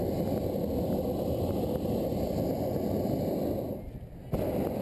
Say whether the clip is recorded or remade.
recorded